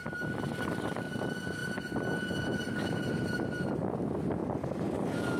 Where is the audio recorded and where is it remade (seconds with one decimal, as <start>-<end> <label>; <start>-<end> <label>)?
0.0-5.4 recorded